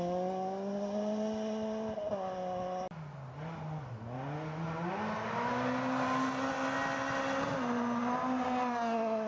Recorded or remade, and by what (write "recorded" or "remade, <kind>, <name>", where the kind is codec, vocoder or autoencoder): recorded